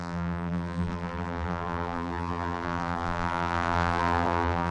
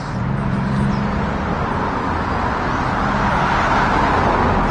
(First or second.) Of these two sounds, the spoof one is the first